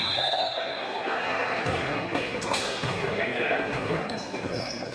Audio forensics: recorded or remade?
remade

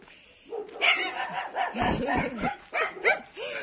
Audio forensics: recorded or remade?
recorded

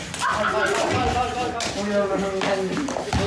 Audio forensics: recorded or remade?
recorded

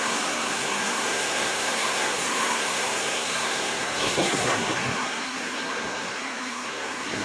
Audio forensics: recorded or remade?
remade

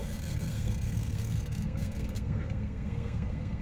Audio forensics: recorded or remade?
remade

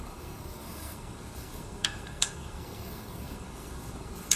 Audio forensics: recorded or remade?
remade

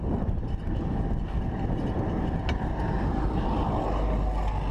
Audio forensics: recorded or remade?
recorded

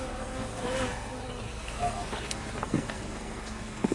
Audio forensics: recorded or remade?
remade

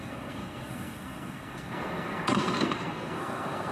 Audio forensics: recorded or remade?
remade